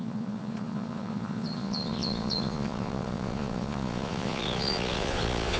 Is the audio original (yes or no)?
no